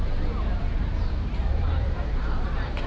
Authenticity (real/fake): fake